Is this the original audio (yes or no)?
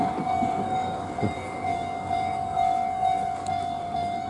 no